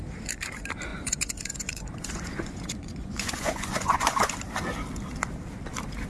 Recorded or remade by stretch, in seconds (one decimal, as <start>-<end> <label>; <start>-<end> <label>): 0.0-0.9 recorded; 0.9-4.3 remade; 4.3-6.1 recorded